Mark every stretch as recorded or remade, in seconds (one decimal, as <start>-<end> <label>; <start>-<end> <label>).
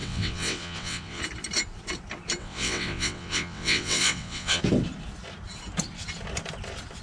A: 0.0-1.2 remade; 1.2-2.4 recorded; 2.4-4.6 remade; 4.6-7.0 recorded